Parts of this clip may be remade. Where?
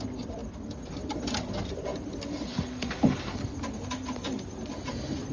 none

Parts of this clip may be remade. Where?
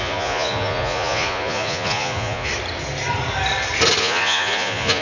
0.0-2.5 (vocoder, Vocos); 4.0-5.0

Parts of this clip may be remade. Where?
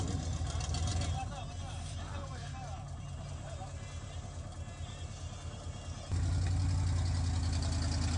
none